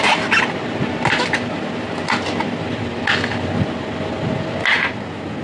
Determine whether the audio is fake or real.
real